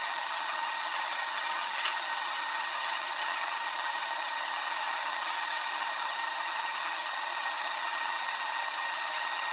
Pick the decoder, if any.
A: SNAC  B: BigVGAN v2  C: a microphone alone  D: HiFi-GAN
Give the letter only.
D